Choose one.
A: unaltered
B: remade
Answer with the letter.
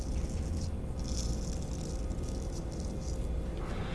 A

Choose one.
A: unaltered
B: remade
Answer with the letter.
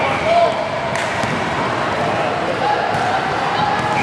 A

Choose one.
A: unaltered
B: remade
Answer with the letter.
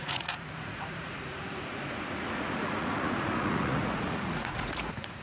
B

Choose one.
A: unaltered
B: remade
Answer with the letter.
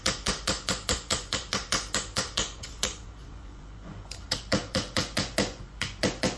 B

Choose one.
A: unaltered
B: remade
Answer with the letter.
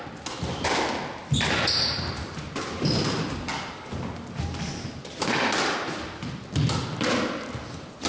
A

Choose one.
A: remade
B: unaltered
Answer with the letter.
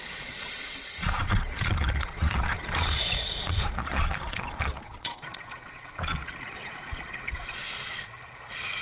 A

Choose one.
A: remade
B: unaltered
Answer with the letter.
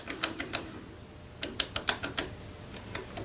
B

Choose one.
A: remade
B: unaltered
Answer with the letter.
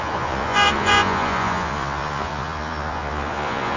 A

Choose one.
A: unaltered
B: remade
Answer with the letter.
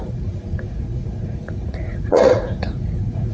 B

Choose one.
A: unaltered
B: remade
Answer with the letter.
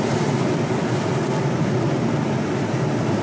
A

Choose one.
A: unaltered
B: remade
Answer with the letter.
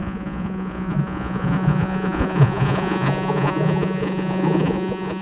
B